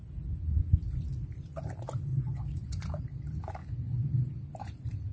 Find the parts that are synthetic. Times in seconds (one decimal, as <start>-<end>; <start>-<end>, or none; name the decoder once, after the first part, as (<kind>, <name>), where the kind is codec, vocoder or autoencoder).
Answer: 2.1-3.0 (vocoder, Vocos); 3.6-4.3